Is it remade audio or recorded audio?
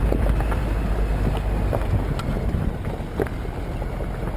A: recorded